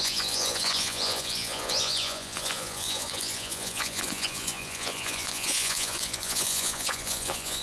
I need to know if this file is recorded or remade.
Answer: remade